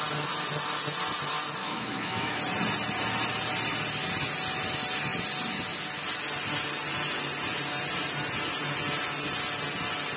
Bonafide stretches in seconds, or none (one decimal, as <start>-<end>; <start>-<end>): 0.0-1.6; 2.4-10.2